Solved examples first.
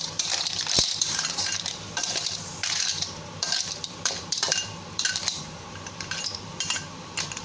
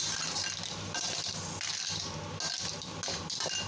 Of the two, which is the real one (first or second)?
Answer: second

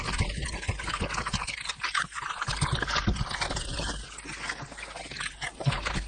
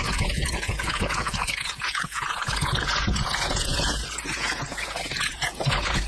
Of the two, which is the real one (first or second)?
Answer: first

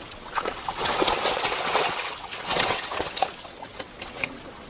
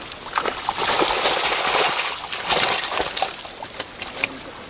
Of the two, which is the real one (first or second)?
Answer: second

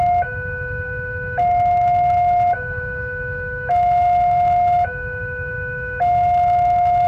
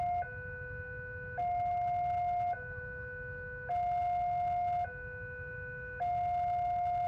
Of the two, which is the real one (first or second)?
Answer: second